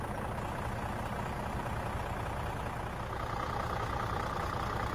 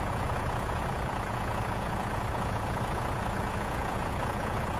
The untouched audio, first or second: first